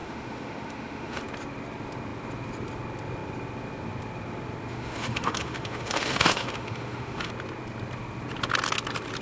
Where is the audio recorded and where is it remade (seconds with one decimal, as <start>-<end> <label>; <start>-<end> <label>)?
0.0-1.2 remade; 1.2-4.7 recorded; 4.7-7.3 remade; 7.3-9.2 recorded